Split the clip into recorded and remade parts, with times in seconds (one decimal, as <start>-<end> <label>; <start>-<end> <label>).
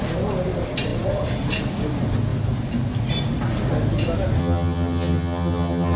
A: 0.0-4.4 recorded; 4.4-6.0 remade